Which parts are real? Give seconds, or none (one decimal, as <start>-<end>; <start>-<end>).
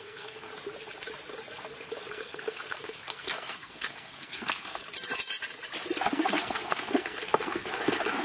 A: 0.5-2.1; 4.8-6.1